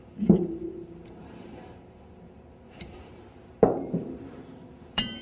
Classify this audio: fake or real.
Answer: fake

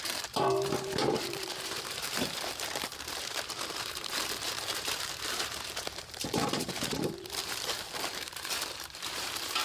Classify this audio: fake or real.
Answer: fake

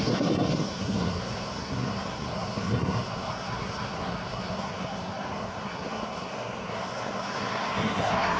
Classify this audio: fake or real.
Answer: fake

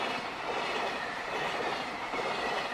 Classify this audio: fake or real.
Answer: fake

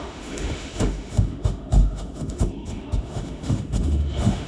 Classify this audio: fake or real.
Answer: fake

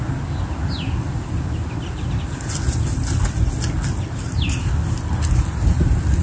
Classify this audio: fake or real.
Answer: real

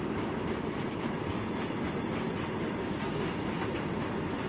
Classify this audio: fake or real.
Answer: real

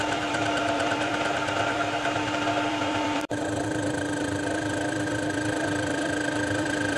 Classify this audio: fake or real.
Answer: fake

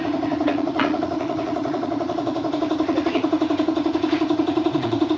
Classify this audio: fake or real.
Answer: fake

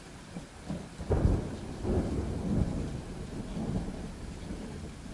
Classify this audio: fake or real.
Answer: real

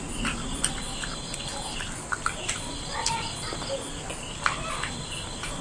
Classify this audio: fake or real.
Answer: real